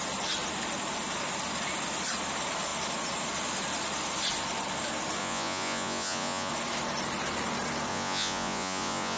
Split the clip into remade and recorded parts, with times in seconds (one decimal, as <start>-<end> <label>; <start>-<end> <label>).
0.0-5.2 recorded; 5.2-6.5 remade; 6.5-7.9 recorded; 7.9-9.2 remade